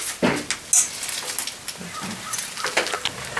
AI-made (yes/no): no